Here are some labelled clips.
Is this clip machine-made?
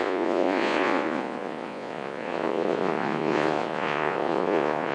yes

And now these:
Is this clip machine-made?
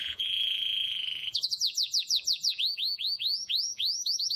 yes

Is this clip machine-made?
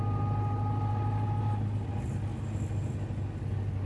no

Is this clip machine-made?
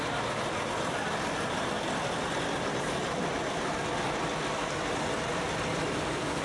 no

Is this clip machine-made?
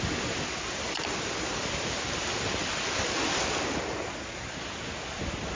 no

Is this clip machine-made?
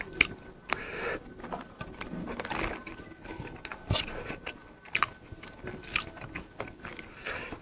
no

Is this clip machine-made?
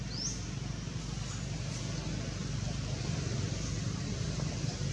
no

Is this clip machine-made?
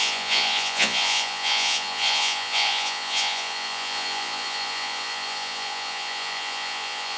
yes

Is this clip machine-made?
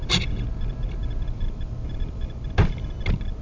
no